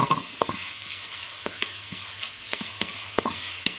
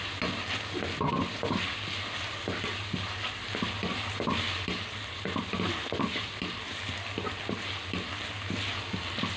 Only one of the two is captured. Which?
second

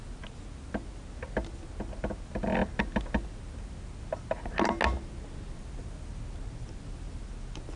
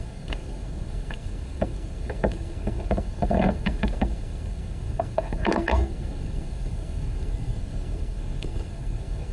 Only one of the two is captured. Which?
first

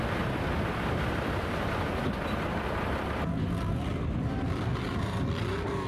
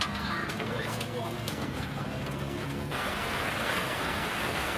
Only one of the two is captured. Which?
first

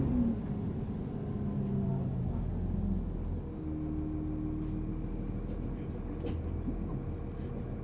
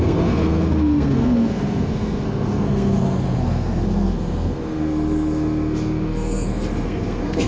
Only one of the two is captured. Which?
first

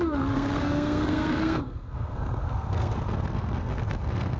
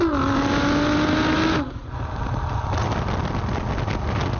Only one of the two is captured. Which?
second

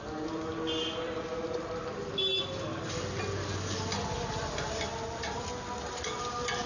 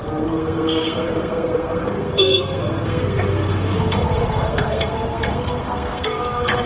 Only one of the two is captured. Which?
first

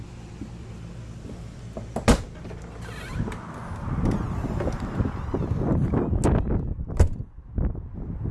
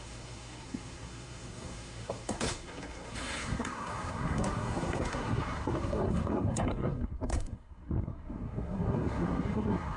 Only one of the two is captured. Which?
first